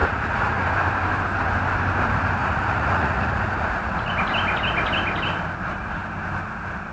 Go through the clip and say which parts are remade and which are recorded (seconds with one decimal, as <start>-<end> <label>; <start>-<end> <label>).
0.0-0.7 remade; 0.7-2.4 recorded; 2.4-4.1 remade; 4.1-6.9 recorded

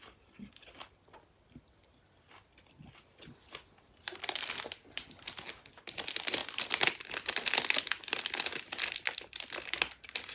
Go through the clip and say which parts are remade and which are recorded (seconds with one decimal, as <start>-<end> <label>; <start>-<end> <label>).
0.0-10.3 recorded